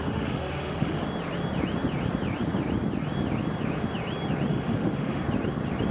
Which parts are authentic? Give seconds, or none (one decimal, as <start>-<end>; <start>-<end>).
1.0-4.5; 5.2-5.9